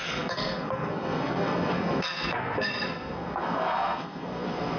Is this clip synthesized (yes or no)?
yes